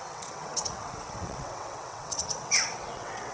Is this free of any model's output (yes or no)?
no